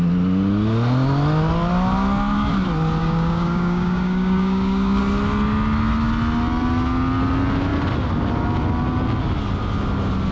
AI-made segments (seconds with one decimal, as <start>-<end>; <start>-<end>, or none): 3.0-5.0

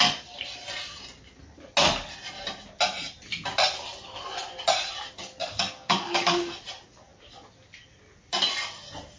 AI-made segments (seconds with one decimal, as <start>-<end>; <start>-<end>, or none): 5.4-6.5

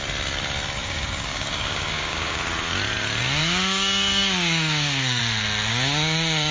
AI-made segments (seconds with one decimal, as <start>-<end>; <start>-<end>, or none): 0.8-2.4; 3.4-5.2; 5.7-6.5

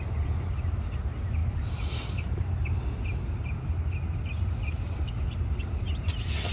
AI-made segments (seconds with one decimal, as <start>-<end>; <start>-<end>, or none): none

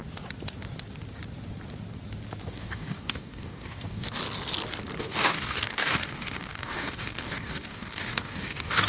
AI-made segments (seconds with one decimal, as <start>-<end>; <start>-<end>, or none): 2.5-4.2; 5.0-8.9

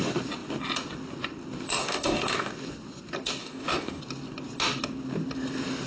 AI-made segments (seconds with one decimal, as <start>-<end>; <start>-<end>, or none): 1.8-2.5; 3.4-4.0

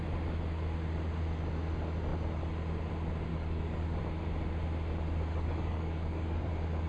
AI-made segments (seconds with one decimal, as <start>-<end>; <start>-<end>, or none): 3.3-4.0; 5.3-6.5